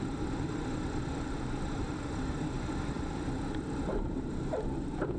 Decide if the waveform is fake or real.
fake